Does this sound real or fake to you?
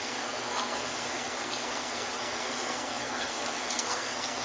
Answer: fake